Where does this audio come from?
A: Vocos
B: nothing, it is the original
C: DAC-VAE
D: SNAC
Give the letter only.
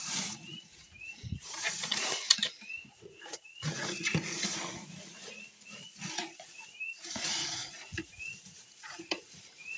A